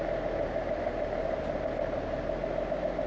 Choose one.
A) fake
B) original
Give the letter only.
B